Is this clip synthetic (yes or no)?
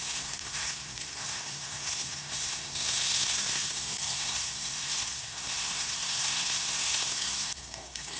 yes